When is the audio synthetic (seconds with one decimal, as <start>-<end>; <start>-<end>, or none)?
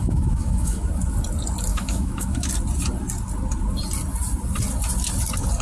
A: 0.0-0.8; 1.7-2.5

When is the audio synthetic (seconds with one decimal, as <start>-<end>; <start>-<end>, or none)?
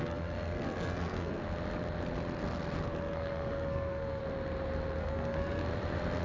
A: 0.0-1.4; 2.9-4.2; 5.0-5.6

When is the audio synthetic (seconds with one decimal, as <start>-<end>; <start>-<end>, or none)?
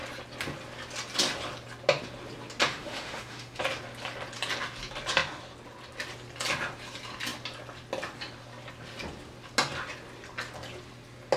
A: 2.7-3.6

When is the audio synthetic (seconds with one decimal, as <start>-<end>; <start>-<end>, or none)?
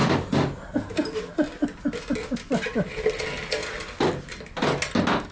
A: none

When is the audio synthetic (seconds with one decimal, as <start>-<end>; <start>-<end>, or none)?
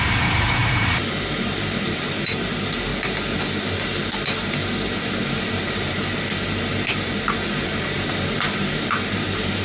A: 0.0-2.9; 5.0-9.6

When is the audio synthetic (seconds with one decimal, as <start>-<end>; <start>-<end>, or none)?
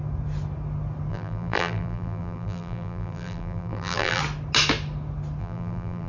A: 1.1-4.2; 5.4-6.1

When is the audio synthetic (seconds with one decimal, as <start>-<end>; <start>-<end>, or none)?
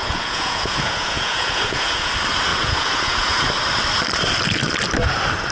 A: 0.0-2.1; 2.5-3.5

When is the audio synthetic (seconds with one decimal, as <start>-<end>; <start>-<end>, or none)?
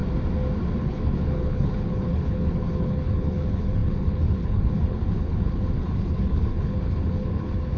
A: 0.8-7.8